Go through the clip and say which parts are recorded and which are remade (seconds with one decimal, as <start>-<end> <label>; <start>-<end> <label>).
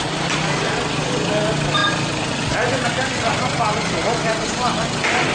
0.0-5.3 recorded